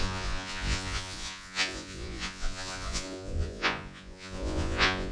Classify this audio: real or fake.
fake